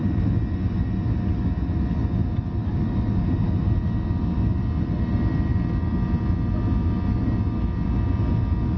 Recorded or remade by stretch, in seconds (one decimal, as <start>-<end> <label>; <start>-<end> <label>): 0.0-8.8 recorded

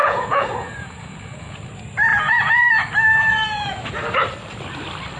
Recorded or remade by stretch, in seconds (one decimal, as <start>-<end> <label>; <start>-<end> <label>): 0.0-1.6 remade; 1.6-2.1 recorded; 2.1-2.7 remade; 2.7-3.3 recorded; 3.3-3.9 remade; 3.9-5.2 recorded

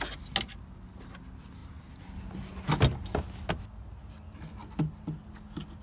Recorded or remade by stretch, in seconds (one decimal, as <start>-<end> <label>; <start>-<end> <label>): 0.0-5.8 recorded

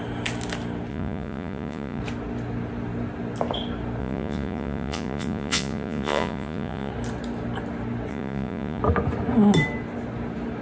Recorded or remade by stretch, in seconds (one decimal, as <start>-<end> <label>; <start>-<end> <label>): 0.0-0.9 recorded; 0.9-2.0 remade; 2.0-4.0 recorded; 4.0-6.9 remade; 6.9-8.1 recorded; 8.1-8.8 remade; 8.8-10.6 recorded

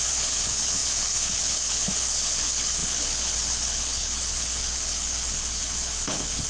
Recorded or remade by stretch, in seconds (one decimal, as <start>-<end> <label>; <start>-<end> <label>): 0.0-6.5 remade

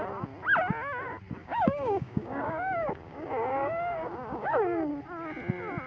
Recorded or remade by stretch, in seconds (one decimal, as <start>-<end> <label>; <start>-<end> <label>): 0.0-1.4 recorded; 1.4-4.9 remade; 4.9-5.9 recorded

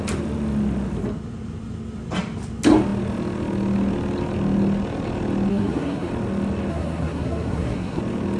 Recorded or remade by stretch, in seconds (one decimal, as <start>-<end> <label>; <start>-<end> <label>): 0.0-5.5 recorded; 5.5-6.1 remade; 6.1-6.7 recorded; 6.7-8.0 remade; 8.0-8.4 recorded